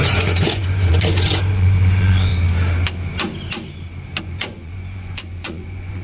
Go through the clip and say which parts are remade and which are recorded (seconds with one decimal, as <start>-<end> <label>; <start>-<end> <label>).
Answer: 0.0-2.3 remade; 2.3-4.2 recorded; 4.2-6.0 remade